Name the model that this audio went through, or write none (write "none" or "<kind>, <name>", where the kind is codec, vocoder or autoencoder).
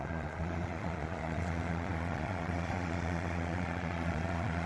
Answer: vocoder, Vocos